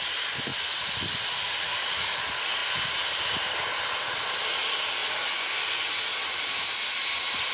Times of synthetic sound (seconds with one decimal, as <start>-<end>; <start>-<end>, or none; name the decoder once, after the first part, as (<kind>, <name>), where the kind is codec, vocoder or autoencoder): 5.0-5.9 (vocoder, Vocos)